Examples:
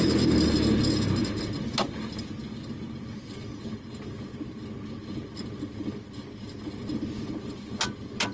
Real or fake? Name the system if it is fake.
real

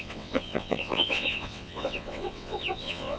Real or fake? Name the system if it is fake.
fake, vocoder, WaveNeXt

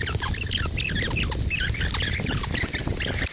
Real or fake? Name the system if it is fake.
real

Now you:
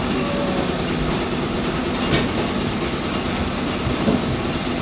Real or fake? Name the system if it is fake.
real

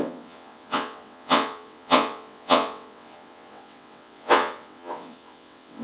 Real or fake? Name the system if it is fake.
fake, vocoder, WaveNeXt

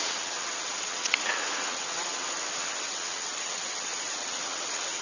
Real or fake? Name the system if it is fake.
fake, vocoder, WaveNeXt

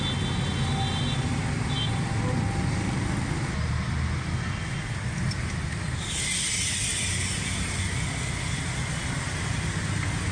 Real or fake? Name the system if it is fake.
real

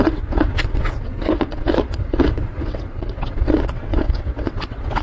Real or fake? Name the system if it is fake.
fake, vocoder, WaveNeXt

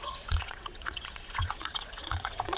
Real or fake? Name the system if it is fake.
fake, vocoder, WaveNeXt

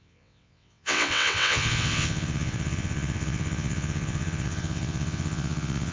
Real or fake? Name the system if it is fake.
fake, vocoder, WaveNeXt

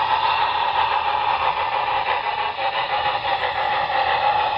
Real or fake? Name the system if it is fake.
real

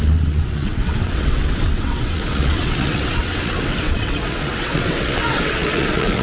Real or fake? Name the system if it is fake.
fake, vocoder, WaveNeXt